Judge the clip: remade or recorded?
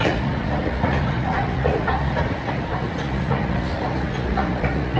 remade